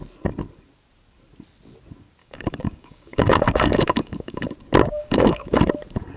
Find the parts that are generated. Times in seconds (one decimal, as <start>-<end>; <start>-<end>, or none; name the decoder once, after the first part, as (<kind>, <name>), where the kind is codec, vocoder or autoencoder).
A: 2.2-4.5 (codec, DAC); 4.9-5.6